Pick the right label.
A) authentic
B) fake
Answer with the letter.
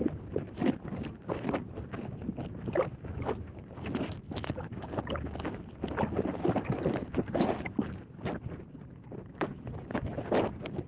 A